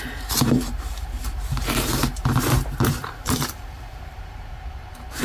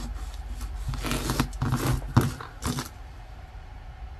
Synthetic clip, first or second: first